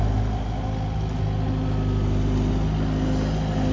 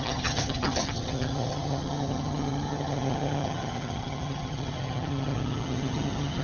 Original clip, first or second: first